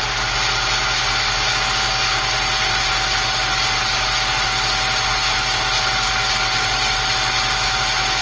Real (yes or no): yes